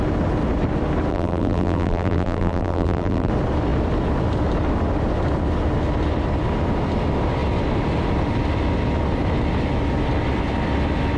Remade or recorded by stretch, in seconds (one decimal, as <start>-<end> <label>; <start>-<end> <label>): 0.0-1.1 recorded; 1.1-3.3 remade; 3.3-11.2 recorded